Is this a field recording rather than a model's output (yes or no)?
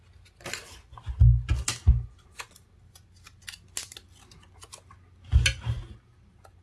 yes